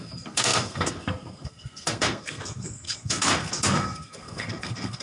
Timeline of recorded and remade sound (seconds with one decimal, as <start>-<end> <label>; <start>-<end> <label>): 0.0-5.0 remade